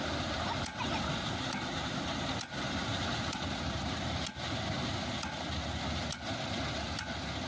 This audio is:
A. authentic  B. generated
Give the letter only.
A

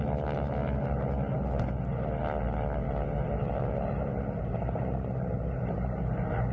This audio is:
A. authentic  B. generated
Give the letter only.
A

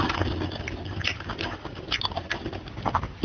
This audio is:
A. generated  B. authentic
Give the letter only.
B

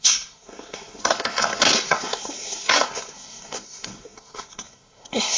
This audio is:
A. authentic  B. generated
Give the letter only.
B